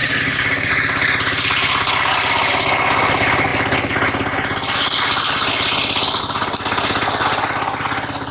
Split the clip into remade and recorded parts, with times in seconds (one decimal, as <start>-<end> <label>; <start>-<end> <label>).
0.0-0.7 remade; 0.7-8.3 recorded